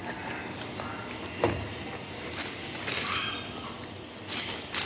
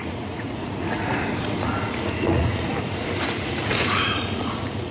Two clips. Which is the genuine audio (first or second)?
first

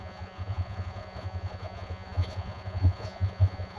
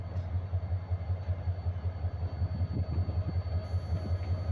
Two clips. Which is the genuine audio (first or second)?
second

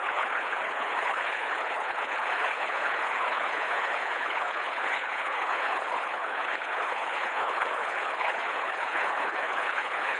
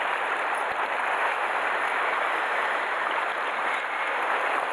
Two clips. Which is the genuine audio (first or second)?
second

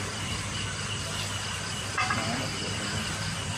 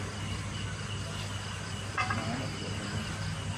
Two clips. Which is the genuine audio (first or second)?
second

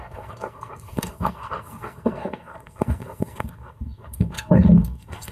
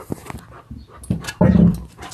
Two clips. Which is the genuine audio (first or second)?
second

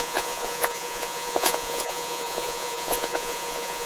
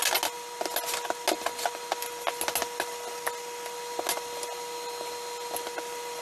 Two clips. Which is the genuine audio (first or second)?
second